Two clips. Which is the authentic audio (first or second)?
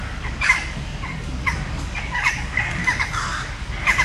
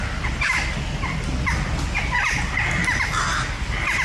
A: second